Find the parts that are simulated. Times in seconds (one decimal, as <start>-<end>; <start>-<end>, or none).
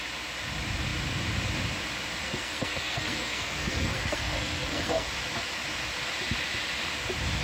2.2-5.1